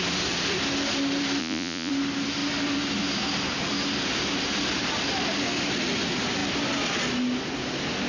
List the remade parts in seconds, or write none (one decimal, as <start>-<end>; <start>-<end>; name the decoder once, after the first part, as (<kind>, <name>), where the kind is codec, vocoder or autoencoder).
1.4-1.9 (vocoder, Vocos)